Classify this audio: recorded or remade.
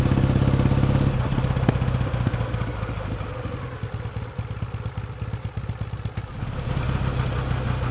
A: recorded